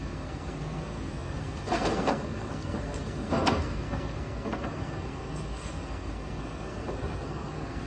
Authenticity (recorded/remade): remade